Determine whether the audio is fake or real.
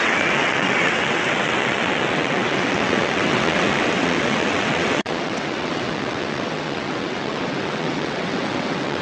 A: fake